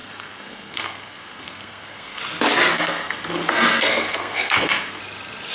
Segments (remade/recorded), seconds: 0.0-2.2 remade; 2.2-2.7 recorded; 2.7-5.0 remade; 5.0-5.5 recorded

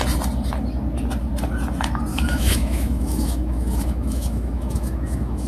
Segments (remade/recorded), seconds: 0.0-2.1 recorded; 2.1-5.5 remade